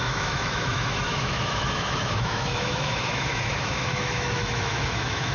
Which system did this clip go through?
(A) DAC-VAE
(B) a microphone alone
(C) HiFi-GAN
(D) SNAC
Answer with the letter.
A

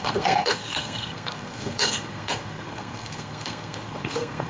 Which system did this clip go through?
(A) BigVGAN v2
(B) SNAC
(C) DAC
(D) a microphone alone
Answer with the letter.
B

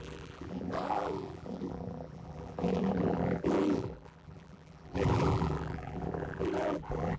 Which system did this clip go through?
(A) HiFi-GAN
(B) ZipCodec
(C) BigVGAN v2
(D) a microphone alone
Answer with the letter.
C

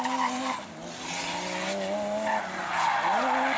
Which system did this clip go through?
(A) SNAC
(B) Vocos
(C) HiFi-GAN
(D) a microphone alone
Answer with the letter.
D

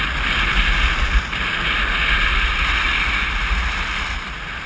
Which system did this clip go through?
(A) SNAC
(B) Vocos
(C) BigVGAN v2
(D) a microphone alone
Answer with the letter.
D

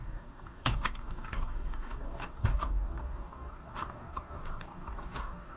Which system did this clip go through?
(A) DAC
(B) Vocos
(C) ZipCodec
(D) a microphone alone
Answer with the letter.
A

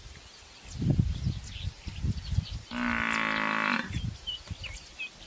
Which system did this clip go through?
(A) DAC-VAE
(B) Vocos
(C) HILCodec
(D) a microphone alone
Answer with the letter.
D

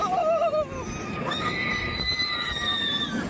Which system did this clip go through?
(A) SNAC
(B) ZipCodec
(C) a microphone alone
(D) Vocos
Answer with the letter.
C